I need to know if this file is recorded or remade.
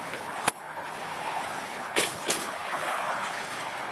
remade